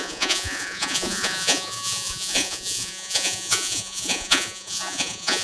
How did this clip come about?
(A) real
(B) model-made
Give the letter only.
B